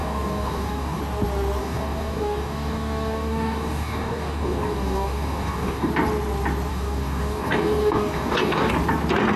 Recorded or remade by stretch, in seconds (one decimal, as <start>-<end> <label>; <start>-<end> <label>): 0.0-1.0 remade; 1.0-1.6 recorded; 1.6-5.9 remade; 5.9-6.7 recorded; 6.7-8.7 remade; 8.7-9.4 recorded